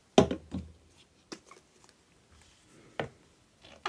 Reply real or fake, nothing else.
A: real